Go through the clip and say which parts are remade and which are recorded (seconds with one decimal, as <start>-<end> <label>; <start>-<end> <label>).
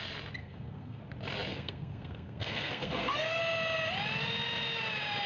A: 0.0-0.4 recorded; 0.4-1.0 remade; 1.0-1.5 recorded; 1.5-3.4 remade; 3.4-5.3 recorded